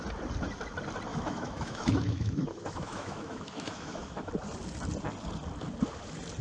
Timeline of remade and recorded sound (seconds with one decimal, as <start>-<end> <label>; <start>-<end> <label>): 0.0-1.1 recorded; 1.1-4.3 remade; 4.3-6.4 recorded